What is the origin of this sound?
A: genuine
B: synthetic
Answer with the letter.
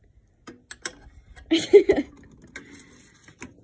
A